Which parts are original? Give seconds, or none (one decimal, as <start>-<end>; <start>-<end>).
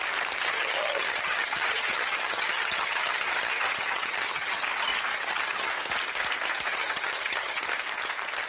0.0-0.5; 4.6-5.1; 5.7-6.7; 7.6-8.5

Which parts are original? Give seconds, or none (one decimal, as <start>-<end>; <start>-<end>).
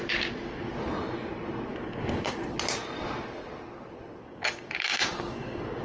0.7-1.7; 2.4-4.2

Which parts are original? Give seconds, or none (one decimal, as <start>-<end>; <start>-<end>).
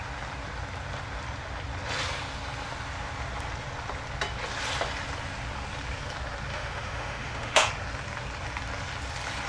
0.0-6.5; 7.7-9.5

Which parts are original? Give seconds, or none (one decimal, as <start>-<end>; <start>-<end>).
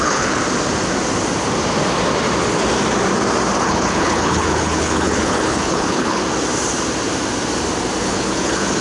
0.4-3.6; 6.2-8.0